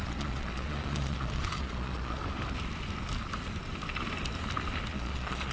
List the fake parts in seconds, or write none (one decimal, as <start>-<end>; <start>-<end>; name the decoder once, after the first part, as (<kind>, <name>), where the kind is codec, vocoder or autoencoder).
0.0-2.2 (vocoder, Vocos); 4.9-5.5